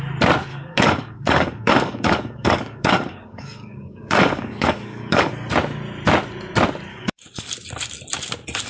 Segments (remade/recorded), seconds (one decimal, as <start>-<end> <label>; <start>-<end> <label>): 0.0-0.5 recorded; 0.5-5.3 remade; 5.3-6.9 recorded; 6.9-7.5 remade; 7.5-8.7 recorded